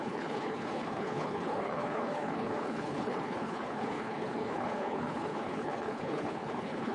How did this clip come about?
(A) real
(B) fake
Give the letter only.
B